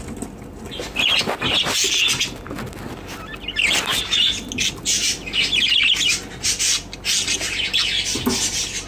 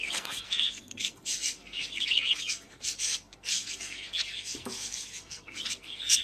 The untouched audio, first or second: first